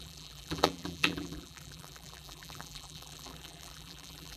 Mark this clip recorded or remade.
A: remade